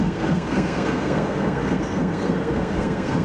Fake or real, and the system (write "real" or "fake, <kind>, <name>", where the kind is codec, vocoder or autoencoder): fake, codec, SNAC